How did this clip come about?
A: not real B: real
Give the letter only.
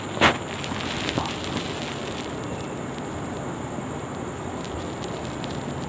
B